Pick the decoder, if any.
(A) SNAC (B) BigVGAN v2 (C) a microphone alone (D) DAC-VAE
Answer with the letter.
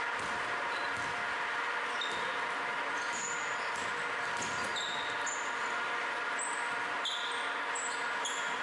C